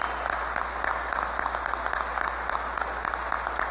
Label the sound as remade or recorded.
recorded